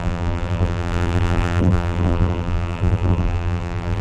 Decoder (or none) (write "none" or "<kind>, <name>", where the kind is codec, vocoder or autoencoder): vocoder, BigVGAN v2